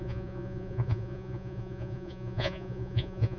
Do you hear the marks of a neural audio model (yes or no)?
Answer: yes